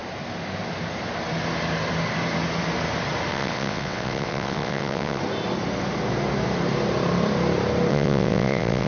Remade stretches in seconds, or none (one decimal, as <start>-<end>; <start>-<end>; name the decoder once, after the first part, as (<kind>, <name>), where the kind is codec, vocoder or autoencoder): 3.3-5.2 (vocoder, WaveNeXt); 7.9-8.9